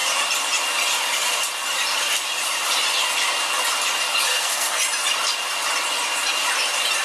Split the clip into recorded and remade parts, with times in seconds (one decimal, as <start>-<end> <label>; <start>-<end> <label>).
0.0-4.3 recorded; 4.3-4.8 remade; 4.8-7.0 recorded